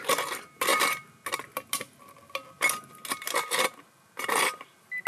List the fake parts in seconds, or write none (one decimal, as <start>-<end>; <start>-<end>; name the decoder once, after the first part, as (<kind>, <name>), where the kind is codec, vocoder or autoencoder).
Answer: none